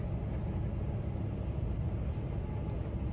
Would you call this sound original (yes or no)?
yes